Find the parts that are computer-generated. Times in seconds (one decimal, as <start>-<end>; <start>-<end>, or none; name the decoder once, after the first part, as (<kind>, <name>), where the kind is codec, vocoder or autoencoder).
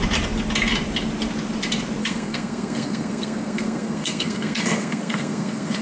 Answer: 2.0-5.8 (codec, SNAC)